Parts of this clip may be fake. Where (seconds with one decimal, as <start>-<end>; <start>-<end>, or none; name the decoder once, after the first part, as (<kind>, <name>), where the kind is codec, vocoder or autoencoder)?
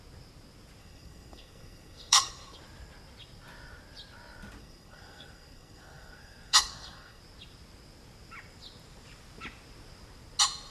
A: 0.8-2.3 (codec, SNAC); 4.6-7.2